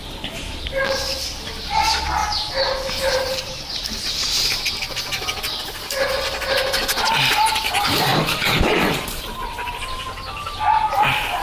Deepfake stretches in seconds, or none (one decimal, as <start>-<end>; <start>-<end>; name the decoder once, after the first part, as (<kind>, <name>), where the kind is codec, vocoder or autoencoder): 0.0-0.6 (vocoder, BigVGAN v2); 2.2-3.5; 8.1-9.7